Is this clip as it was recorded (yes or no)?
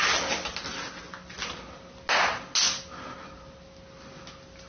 yes